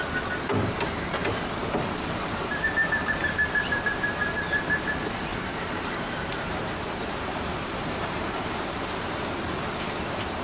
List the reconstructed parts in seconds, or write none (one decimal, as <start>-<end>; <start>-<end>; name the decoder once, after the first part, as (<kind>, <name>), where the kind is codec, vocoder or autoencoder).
1.2-3.1 (vocoder, BigVGAN v2); 5.3-8.7